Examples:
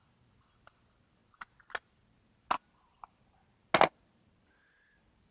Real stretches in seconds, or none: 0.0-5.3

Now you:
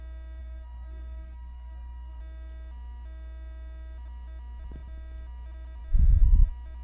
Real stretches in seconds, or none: 0.0-0.4; 2.2-6.8

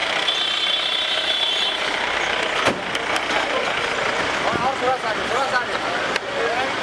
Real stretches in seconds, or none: 2.4-6.8

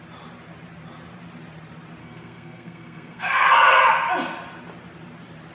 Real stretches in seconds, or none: 0.0-2.0; 3.8-5.5

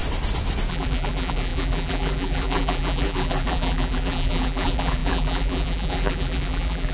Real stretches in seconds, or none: 0.0-0.7

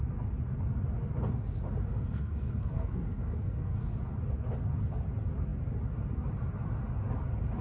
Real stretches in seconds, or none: 0.0-1.9; 3.9-7.6

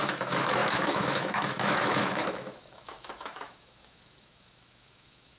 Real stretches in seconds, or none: none

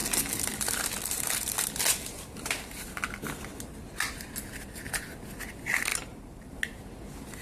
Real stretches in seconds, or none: 0.0-5.9; 6.5-7.4